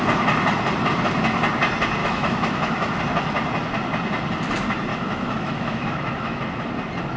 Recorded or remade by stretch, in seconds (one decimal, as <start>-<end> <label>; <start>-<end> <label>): 0.0-2.0 recorded; 2.0-3.0 remade; 3.0-4.9 recorded; 4.9-6.4 remade; 6.4-7.2 recorded